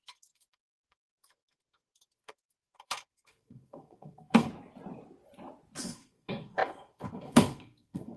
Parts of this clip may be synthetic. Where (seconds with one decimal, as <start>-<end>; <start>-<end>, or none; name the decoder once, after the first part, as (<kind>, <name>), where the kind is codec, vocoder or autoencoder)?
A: 0.0-4.5 (codec, SNAC); 5.8-8.2